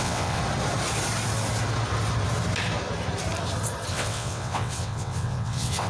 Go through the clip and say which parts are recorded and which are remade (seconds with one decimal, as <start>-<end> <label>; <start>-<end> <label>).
0.0-0.4 remade; 0.4-3.9 recorded; 3.9-5.9 remade